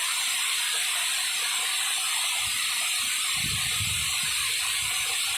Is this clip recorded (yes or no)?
yes